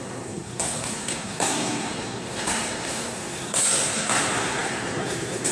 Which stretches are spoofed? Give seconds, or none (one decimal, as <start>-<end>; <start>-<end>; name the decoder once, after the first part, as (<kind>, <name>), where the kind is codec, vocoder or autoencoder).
0.0-5.5 (codec, SNAC)